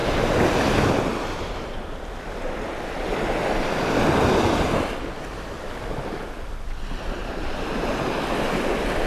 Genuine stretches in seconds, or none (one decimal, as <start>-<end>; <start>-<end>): 0.0-7.2; 7.9-9.1